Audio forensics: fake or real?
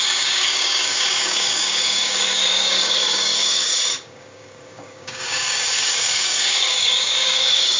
fake